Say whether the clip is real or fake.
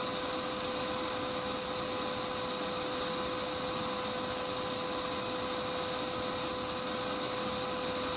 real